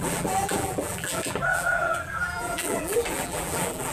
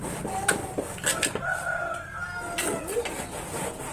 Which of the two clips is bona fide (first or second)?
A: second